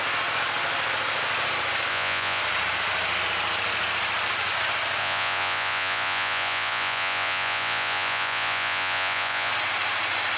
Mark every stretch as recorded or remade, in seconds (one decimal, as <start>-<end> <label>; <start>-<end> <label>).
0.0-1.9 recorded; 1.9-2.4 remade; 2.4-5.0 recorded; 5.0-9.5 remade; 9.5-10.4 recorded